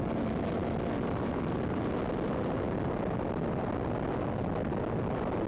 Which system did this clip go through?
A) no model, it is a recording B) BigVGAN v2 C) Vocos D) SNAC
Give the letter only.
A